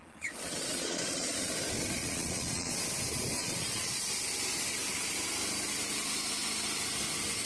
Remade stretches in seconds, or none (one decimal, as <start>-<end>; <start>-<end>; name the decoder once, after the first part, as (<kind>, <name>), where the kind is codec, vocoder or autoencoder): 0.0-1.5 (vocoder, Vocos); 2.0-2.7; 3.4-4.1